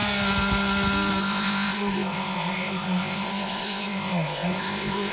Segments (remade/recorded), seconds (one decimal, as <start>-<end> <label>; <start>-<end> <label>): 0.0-1.2 recorded; 1.2-5.1 remade